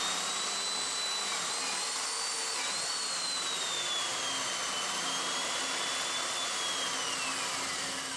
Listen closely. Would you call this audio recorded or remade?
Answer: recorded